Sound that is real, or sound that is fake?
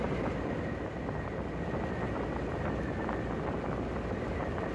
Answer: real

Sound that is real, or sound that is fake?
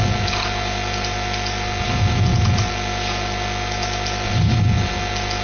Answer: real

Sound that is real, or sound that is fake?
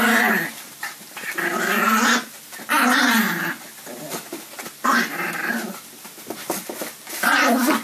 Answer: real